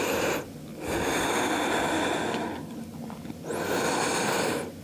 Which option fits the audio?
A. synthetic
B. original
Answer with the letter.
B